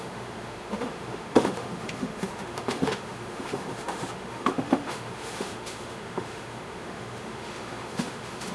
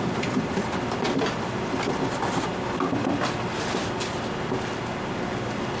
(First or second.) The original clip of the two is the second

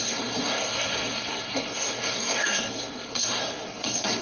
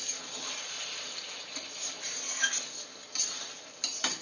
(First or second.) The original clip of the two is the second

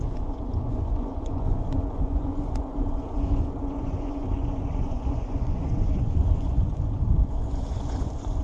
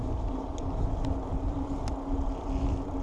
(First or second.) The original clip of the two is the second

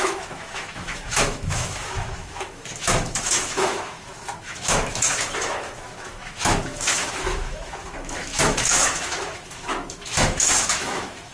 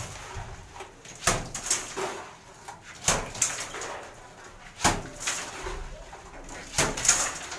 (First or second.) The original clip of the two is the second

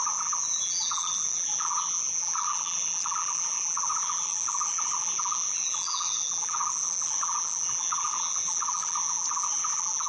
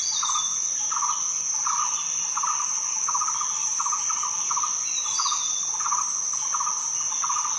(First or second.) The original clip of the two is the second